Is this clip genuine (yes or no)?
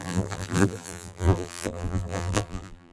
no